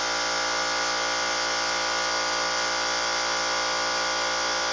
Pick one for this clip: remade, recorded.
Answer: recorded